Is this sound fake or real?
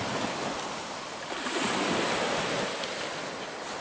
real